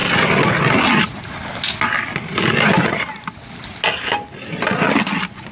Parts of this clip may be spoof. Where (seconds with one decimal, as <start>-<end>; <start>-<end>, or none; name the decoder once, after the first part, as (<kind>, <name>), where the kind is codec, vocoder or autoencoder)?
none